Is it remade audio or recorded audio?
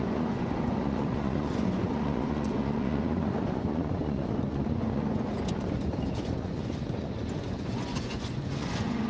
remade